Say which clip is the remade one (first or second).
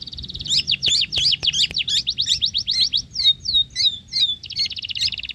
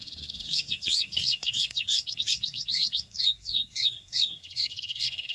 second